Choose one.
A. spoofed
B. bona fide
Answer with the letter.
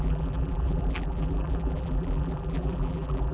A